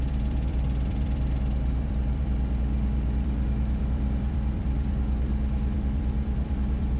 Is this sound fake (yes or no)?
yes